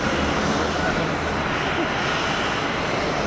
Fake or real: real